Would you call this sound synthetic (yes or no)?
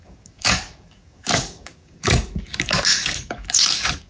yes